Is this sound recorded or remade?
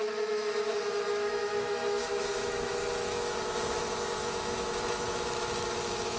remade